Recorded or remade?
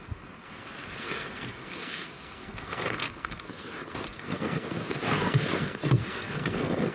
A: remade